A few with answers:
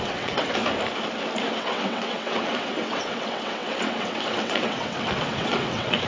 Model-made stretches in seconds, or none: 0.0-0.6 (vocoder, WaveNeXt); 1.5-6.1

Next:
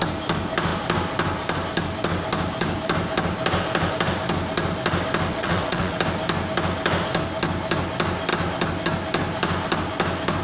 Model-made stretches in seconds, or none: 5.3-6.0 (vocoder, WaveNeXt)

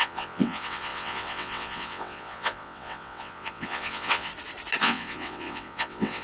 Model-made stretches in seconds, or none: 0.0-4.3 (vocoder, WaveNeXt); 4.8-6.2

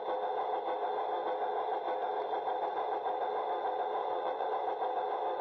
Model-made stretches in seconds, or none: 4.0-4.5 (vocoder, WaveNeXt)

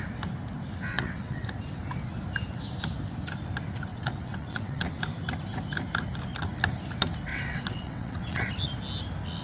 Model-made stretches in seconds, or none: 0.9-1.5 (vocoder, WaveNeXt); 3.9-5.0; 7.3-8.5

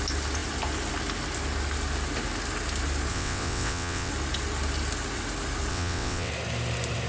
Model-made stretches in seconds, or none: 3.1-4.1 (vocoder, WaveNeXt); 5.7-6.3